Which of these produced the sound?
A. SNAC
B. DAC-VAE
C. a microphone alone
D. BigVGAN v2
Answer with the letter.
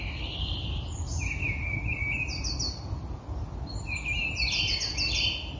C